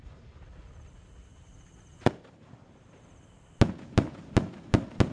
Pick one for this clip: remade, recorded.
recorded